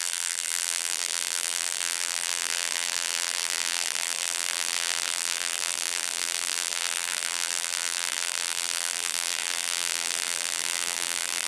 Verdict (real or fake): fake